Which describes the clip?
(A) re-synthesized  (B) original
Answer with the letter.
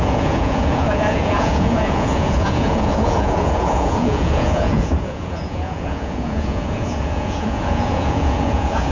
A